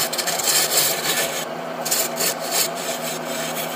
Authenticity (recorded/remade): remade